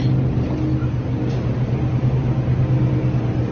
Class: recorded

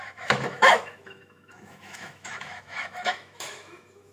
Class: remade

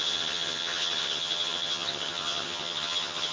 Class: remade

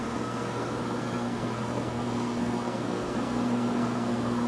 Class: remade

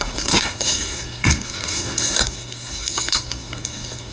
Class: remade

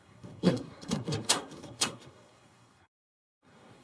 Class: remade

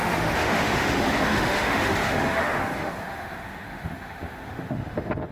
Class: remade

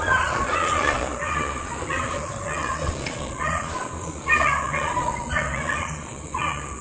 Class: remade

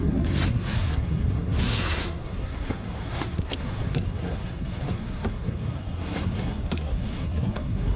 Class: remade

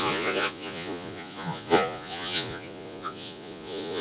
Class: remade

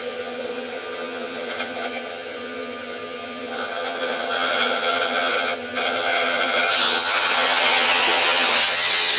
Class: remade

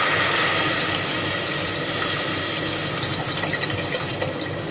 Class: recorded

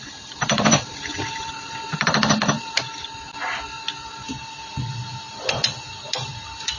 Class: remade